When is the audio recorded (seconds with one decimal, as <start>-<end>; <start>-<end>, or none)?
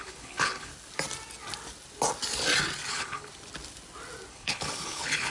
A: 0.7-2.9; 3.3-4.3